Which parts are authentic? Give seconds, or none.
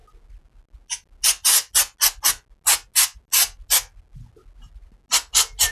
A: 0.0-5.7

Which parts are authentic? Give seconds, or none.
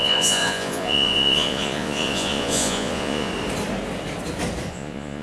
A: 3.3-4.7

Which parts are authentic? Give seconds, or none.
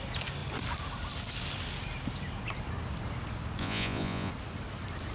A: 0.0-3.6; 4.3-5.1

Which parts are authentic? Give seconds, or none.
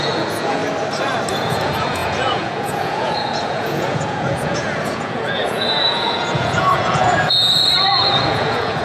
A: 0.6-1.3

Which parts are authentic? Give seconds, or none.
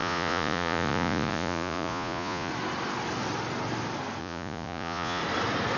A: 2.5-4.2; 5.2-5.8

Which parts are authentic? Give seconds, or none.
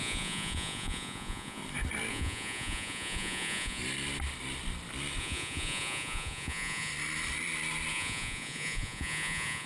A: 1.6-2.1; 3.8-5.2; 6.9-7.9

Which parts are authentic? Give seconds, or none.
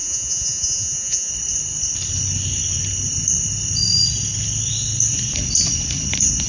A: 1.3-6.5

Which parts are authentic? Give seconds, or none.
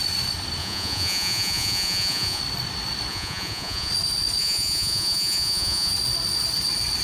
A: 0.0-0.6; 2.4-3.1; 3.9-4.4; 5.9-7.0